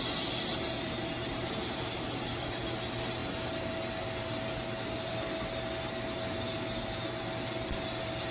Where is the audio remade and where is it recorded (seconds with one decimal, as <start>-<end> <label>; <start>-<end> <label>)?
0.0-0.5 recorded; 0.5-2.6 remade; 2.6-8.3 recorded